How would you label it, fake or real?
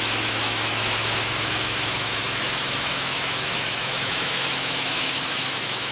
fake